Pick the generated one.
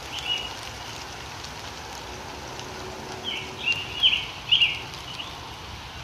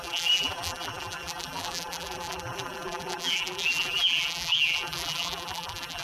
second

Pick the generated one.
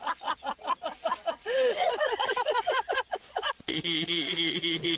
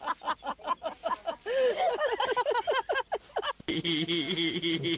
first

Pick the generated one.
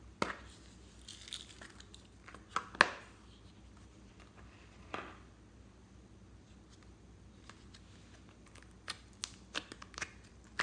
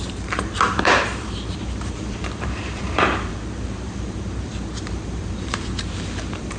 second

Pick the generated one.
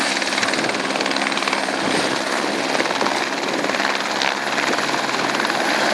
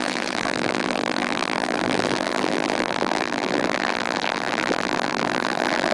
second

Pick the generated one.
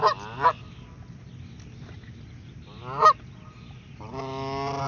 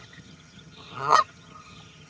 second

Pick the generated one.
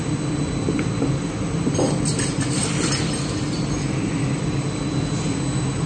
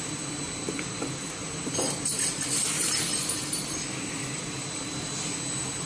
second